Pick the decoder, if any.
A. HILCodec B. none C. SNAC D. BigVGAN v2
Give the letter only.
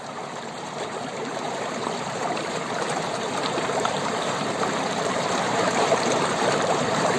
D